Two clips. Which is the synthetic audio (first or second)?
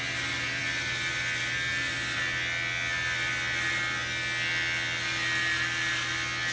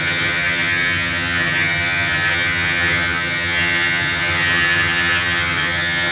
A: second